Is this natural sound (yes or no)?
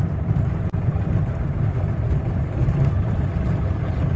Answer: yes